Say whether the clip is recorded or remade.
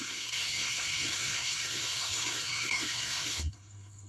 remade